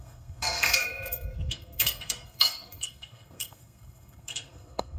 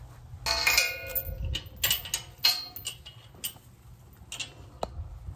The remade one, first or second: first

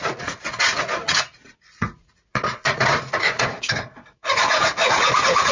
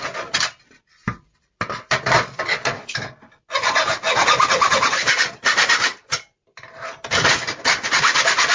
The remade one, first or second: first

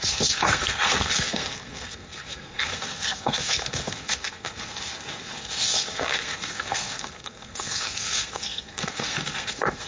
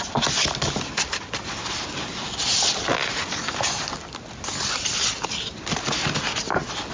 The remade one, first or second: first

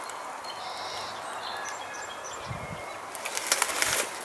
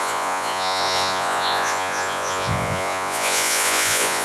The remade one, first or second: second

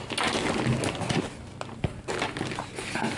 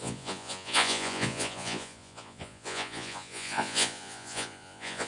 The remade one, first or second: second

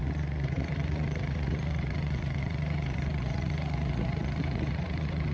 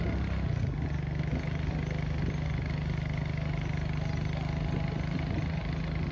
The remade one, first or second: first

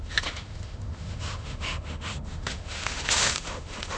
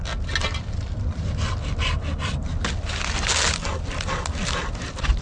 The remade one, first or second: first